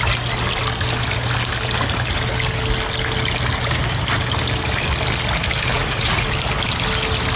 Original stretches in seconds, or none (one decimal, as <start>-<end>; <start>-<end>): 0.0-5.7; 6.3-7.4